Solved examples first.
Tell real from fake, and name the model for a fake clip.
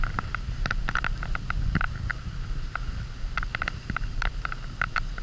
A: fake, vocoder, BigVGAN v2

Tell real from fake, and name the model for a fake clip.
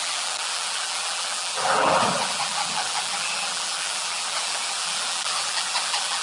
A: fake, vocoder, BigVGAN v2